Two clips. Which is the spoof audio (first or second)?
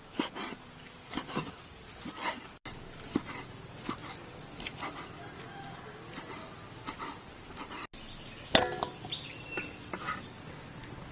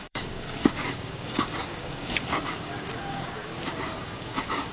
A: second